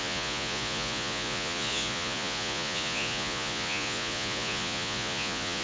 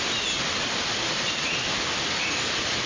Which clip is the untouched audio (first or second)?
second